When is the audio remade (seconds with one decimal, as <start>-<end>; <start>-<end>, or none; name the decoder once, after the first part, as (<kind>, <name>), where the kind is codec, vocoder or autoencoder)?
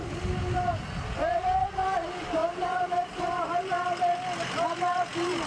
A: 2.4-3.5 (vocoder, BigVGAN v2)